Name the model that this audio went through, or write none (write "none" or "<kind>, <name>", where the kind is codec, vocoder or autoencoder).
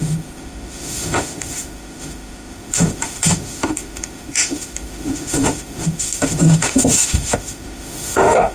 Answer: autoencoder, DAC-VAE